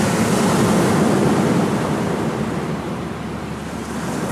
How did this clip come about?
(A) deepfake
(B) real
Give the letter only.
B